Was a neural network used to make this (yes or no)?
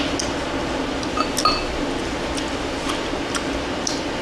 no